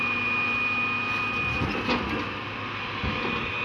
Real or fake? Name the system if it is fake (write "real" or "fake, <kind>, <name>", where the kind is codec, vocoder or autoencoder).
real